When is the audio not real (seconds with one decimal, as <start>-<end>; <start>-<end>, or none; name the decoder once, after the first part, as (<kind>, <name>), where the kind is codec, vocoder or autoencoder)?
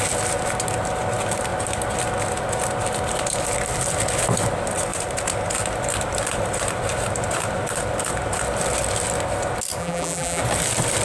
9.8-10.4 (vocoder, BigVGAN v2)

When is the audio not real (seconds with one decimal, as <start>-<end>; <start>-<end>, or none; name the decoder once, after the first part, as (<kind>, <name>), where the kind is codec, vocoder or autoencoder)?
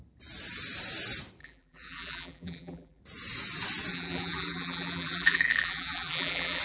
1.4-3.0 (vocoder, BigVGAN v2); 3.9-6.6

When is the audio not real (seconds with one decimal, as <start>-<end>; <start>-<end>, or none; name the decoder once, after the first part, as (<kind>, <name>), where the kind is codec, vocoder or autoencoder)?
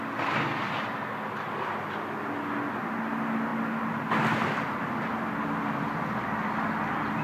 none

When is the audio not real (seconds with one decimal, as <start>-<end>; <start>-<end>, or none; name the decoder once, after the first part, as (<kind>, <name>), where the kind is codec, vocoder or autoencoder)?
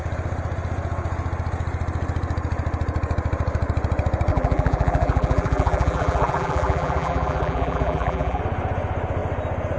4.3-8.4 (vocoder, BigVGAN v2)